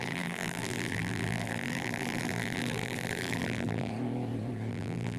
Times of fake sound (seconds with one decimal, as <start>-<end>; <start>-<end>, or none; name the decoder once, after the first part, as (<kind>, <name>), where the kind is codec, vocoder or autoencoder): 0.0-3.9 (vocoder, BigVGAN v2); 4.7-5.2